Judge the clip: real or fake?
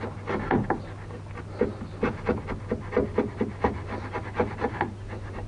real